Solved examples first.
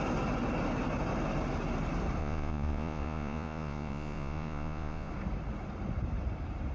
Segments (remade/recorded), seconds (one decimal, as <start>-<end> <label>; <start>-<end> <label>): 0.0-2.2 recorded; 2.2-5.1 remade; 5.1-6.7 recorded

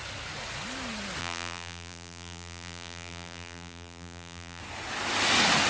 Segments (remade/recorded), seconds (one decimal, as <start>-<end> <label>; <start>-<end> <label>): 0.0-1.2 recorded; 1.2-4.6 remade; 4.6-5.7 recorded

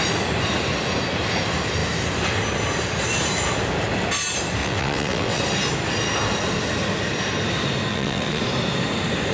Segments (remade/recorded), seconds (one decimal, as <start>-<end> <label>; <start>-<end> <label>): 0.0-4.6 recorded; 4.6-5.4 remade; 5.4-7.9 recorded; 7.9-8.4 remade; 8.4-9.3 recorded

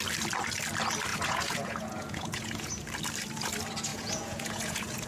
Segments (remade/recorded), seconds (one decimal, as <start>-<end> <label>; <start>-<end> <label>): 0.0-1.1 recorded; 1.1-2.7 remade; 2.7-3.9 recorded; 3.9-5.1 remade

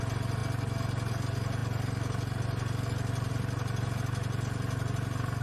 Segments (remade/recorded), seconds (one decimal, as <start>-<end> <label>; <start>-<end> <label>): 0.0-5.4 recorded

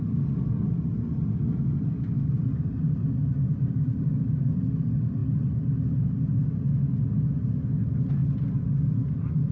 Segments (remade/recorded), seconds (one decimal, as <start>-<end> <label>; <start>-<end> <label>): 0.0-3.2 recorded; 3.2-4.4 remade; 4.4-9.5 recorded